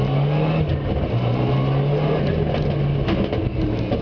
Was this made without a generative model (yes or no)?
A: yes